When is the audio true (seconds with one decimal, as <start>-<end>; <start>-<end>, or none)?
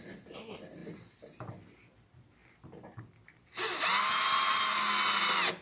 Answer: 0.0-5.6